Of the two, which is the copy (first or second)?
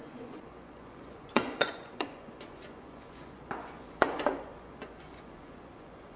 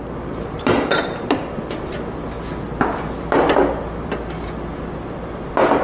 first